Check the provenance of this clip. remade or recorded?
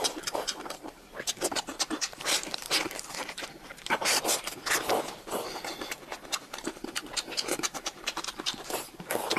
remade